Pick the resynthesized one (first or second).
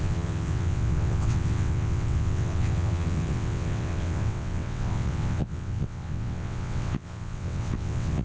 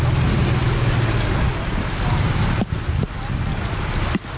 first